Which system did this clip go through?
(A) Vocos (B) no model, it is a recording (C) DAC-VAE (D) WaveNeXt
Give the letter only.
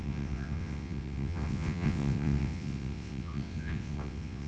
D